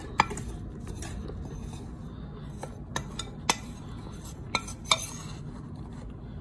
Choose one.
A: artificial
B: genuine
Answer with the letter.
B